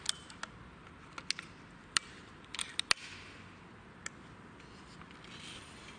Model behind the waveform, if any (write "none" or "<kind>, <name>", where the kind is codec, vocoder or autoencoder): none